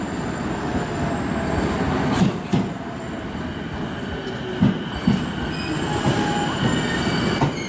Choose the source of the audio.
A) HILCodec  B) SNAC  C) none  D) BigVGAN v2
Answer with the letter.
C